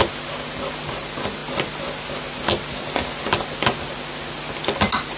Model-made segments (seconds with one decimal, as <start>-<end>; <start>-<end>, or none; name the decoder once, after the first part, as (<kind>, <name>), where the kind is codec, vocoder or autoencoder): none